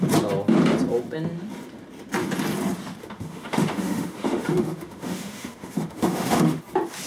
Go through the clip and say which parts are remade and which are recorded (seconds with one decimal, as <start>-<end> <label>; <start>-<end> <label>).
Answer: 0.0-3.0 recorded; 3.0-6.6 remade; 6.6-7.1 recorded